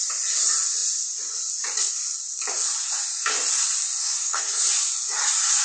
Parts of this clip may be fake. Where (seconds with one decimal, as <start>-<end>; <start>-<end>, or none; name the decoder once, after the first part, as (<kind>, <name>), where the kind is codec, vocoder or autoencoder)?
4.0-4.6 (codec, SNAC)